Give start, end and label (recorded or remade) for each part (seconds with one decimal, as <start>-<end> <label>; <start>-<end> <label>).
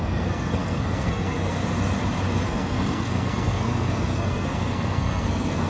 0.0-1.6 remade; 1.6-2.4 recorded; 2.4-5.7 remade